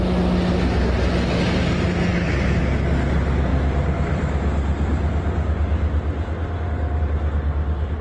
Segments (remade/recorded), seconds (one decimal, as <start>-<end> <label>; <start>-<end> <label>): 0.0-2.1 recorded; 2.1-2.6 remade; 2.6-8.0 recorded